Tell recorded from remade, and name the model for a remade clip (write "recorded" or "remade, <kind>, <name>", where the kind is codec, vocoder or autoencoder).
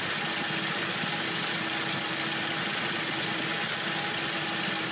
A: recorded